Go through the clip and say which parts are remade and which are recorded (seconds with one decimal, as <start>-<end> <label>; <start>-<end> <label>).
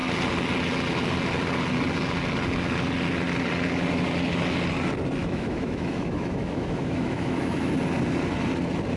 0.0-5.2 recorded; 5.2-7.7 remade; 7.7-9.0 recorded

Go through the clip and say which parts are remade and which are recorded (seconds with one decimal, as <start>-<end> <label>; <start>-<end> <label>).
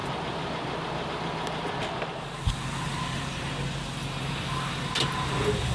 0.0-2.9 recorded; 2.9-3.5 remade; 3.5-5.7 recorded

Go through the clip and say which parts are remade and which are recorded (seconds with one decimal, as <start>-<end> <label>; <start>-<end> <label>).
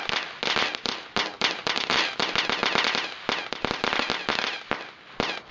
0.0-5.5 recorded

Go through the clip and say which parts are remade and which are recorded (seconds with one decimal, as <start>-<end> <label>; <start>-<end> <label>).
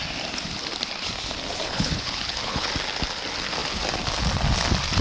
0.0-1.6 recorded; 1.6-2.7 remade; 2.7-5.0 recorded